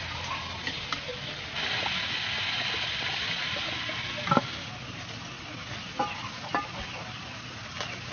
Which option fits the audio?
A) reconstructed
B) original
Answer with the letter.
B